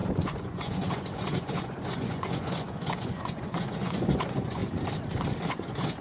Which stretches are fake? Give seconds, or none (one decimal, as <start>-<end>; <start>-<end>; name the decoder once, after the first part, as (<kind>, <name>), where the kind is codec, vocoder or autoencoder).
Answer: 0.0-4.6 (vocoder, Vocos); 5.5-6.0